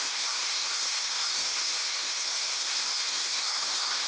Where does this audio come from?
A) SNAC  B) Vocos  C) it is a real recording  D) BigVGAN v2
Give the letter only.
A